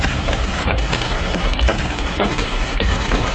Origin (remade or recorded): remade